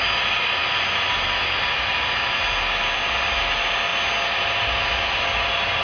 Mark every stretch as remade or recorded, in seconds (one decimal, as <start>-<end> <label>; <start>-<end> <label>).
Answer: 0.0-5.8 recorded